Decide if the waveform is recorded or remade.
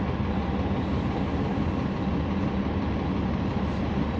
recorded